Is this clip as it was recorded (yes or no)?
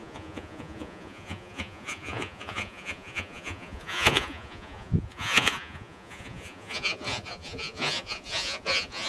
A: no